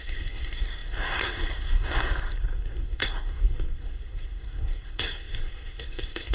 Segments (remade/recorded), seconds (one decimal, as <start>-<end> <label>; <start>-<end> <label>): 0.0-6.3 remade